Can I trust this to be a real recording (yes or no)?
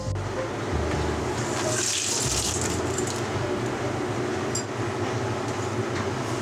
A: yes